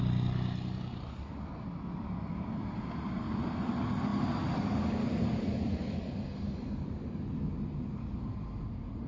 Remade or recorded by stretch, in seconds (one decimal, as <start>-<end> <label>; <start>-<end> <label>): 0.0-9.1 recorded